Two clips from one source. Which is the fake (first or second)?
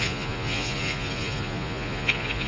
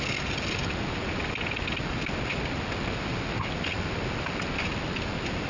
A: first